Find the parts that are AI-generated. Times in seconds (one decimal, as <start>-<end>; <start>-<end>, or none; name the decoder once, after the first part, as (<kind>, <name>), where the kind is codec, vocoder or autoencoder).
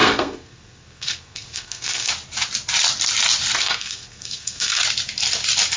0.0-2.1 (codec, SNAC); 3.6-4.8